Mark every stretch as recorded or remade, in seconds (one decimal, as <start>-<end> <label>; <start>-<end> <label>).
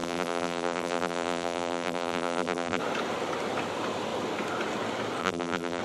0.0-2.8 remade; 2.8-5.2 recorded; 5.2-5.8 remade